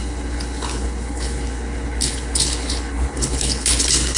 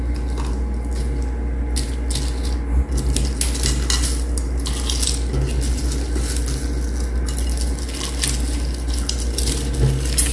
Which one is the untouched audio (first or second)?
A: second